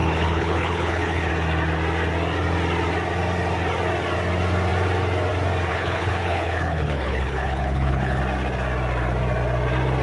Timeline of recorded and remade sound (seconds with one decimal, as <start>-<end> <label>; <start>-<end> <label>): 0.0-1.3 remade; 1.3-5.7 recorded; 5.7-8.2 remade; 8.2-10.0 recorded